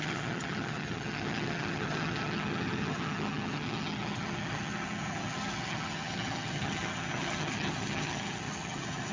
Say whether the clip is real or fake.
fake